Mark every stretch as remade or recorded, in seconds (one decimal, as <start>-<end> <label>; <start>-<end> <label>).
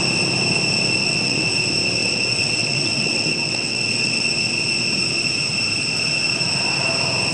0.0-1.0 recorded; 1.0-1.6 remade; 1.6-2.0 recorded; 2.0-4.3 remade; 4.3-7.3 recorded